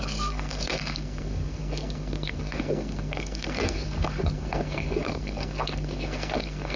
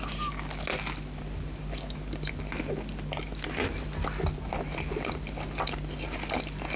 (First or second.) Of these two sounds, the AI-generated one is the first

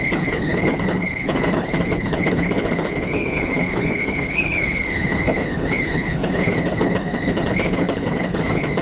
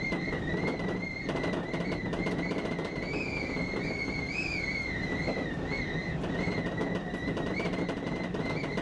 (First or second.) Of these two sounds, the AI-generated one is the first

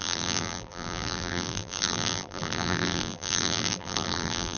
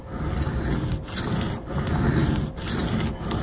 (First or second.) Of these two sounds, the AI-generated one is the first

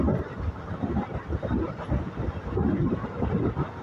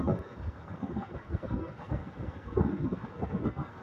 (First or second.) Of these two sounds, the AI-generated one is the second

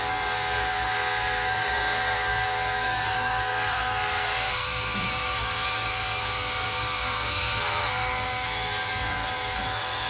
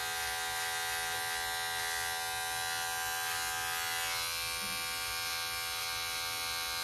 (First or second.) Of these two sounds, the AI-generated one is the first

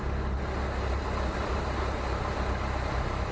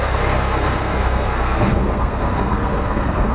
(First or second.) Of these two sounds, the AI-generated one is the second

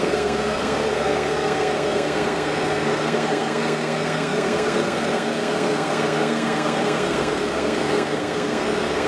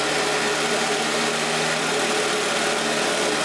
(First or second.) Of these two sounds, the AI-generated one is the first